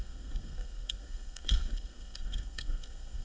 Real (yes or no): no